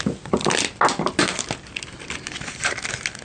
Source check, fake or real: real